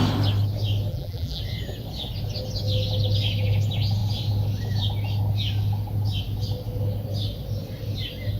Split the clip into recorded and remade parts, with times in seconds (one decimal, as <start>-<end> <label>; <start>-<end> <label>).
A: 0.0-0.9 recorded; 0.9-1.4 remade; 1.4-8.4 recorded